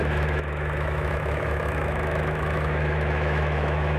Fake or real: fake